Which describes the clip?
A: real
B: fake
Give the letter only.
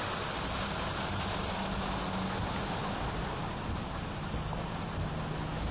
A